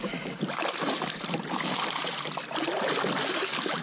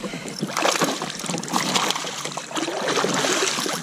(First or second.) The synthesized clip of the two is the second